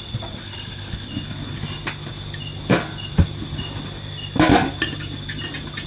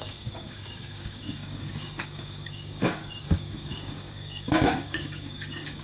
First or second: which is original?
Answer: first